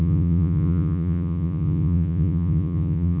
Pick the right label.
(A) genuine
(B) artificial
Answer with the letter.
B